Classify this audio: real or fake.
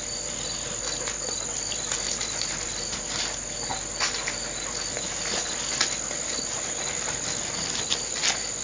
real